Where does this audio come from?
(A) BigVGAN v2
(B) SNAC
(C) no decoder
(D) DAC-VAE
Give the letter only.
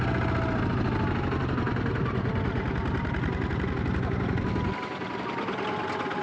C